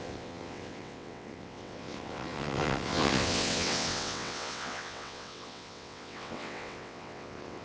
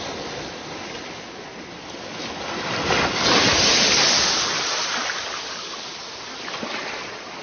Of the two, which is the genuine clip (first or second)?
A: second